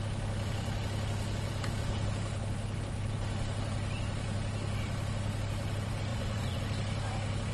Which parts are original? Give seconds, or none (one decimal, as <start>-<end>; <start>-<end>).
0.0-6.1; 6.6-7.5